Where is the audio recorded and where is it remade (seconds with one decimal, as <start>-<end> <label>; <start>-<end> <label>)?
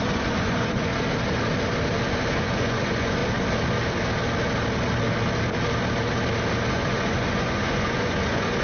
0.0-0.9 remade; 0.9-2.1 recorded; 2.1-3.2 remade; 3.2-6.7 recorded; 6.7-8.6 remade